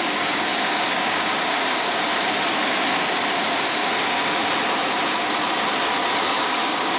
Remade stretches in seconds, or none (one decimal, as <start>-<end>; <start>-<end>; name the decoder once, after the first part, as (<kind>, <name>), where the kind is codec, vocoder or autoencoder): 0.0-2.1 (codec, DAC); 6.3-7.0